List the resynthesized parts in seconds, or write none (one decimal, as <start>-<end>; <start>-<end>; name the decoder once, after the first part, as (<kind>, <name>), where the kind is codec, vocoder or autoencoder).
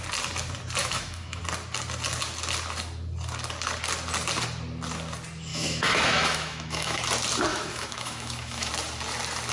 0.8-1.4 (autoencoder, DAC-VAE); 5.5-7.0; 7.5-8.7